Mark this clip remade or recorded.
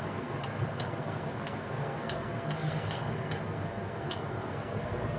remade